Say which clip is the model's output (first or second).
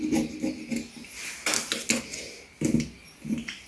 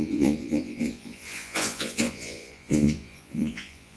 second